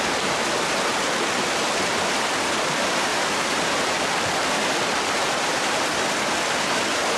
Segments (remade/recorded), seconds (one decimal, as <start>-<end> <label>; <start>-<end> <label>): 0.0-3.1 recorded; 3.1-4.1 remade; 4.1-7.2 recorded